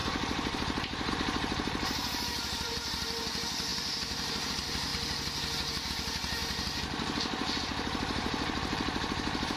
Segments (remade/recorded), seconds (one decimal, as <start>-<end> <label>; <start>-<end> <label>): 0.0-4.9 remade; 4.9-5.9 recorded; 5.9-6.4 remade; 6.4-7.6 recorded; 7.6-9.6 remade